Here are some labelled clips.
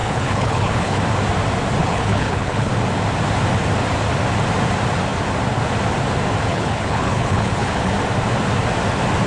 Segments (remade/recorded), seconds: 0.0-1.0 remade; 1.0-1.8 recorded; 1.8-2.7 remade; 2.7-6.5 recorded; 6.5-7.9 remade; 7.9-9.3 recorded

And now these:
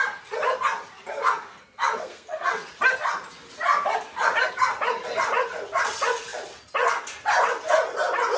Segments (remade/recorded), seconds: 0.0-1.2 recorded; 1.2-2.5 remade; 2.5-8.4 recorded

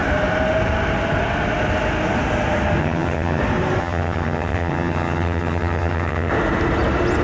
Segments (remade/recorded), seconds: 0.0-2.8 recorded; 2.8-3.4 remade; 3.4-3.8 recorded; 3.8-6.3 remade; 6.3-7.2 recorded

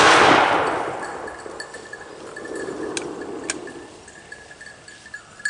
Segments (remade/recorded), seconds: 0.0-5.5 recorded

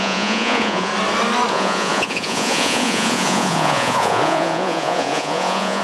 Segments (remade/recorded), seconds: 0.0-0.9 remade; 0.9-1.5 recorded; 1.5-5.8 remade